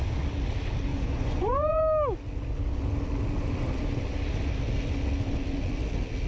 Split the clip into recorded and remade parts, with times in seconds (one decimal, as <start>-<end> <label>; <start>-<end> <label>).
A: 0.0-0.9 recorded; 0.9-1.8 remade; 1.8-6.3 recorded